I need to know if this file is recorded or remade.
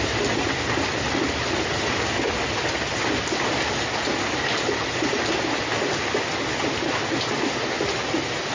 recorded